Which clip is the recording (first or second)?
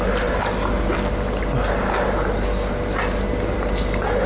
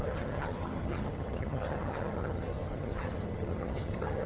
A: first